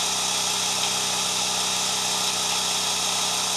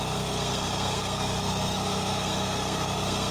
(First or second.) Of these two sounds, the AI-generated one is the second